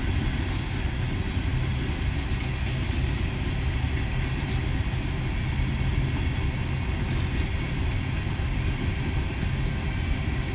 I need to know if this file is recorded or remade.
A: recorded